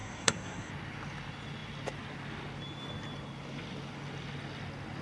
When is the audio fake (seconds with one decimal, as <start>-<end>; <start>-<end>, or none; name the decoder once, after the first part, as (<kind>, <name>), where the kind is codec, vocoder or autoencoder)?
0.0-0.7 (codec, SNAC)